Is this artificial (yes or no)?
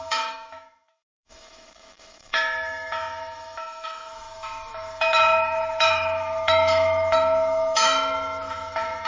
yes